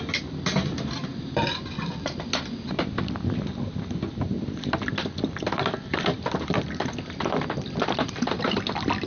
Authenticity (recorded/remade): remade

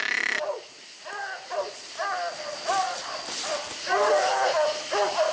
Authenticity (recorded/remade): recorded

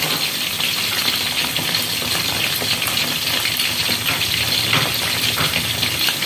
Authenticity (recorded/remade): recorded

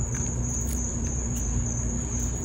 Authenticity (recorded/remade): remade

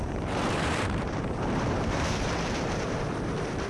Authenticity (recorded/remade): remade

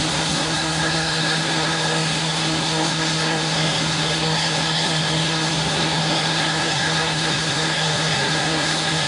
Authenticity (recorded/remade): remade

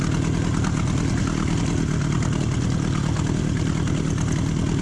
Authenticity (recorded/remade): recorded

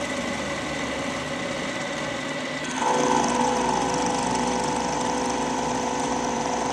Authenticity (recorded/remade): recorded